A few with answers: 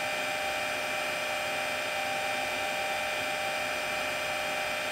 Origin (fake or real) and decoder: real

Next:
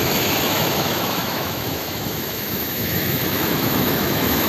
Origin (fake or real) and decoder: fake, autoencoder, DAC-VAE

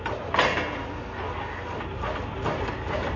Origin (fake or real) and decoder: real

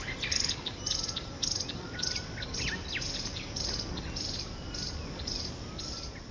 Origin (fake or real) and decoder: real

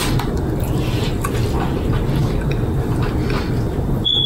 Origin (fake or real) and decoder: real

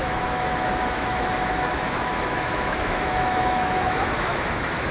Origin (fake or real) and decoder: fake, autoencoder, DAC-VAE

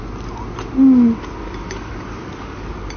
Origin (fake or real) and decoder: real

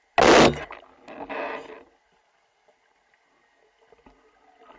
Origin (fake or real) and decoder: real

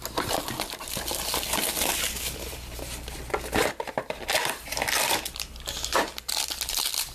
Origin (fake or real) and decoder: real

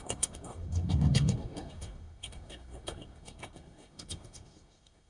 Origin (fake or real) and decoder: fake, codec, SNAC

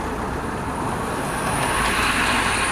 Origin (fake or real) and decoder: real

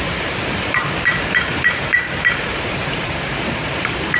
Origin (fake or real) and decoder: fake, vocoder, BigVGAN v2